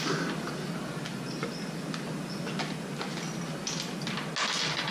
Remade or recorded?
recorded